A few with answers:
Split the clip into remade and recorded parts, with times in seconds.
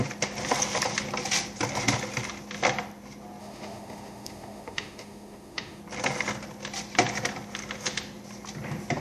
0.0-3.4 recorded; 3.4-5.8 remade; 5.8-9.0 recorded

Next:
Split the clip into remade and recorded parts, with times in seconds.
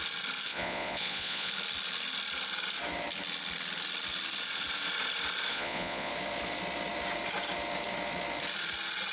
0.0-0.5 recorded; 0.5-1.5 remade; 1.5-5.5 recorded; 5.5-6.1 remade; 6.1-9.1 recorded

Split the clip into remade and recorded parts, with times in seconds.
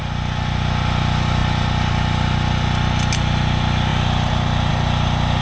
0.0-5.4 recorded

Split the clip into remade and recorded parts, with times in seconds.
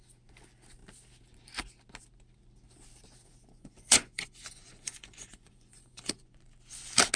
0.0-3.3 recorded; 3.3-6.5 remade; 6.5-7.2 recorded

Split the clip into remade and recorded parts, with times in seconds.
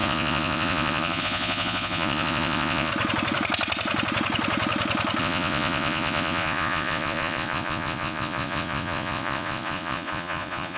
0.0-2.9 remade; 2.9-5.2 recorded; 5.2-10.8 remade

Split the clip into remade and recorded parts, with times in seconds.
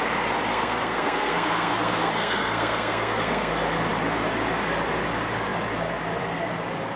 0.0-0.5 recorded; 0.5-3.5 remade; 3.5-7.0 recorded